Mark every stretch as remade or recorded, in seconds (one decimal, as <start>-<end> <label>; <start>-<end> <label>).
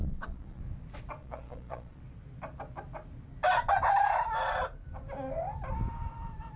0.0-0.6 remade; 0.6-1.2 recorded; 1.2-2.0 remade; 2.0-6.6 recorded